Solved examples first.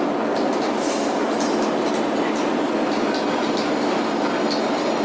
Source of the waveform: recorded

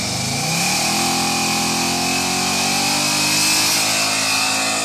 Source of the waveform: recorded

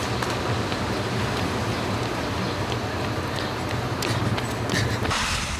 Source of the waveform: recorded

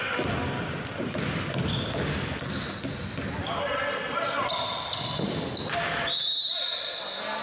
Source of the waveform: recorded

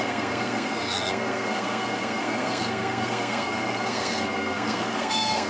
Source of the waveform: remade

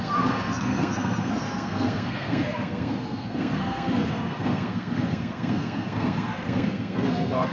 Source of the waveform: remade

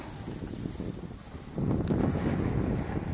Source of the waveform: recorded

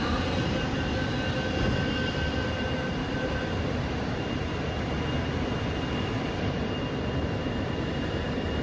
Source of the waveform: recorded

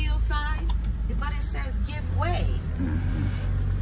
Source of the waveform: recorded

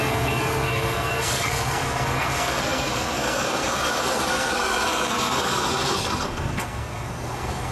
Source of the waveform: remade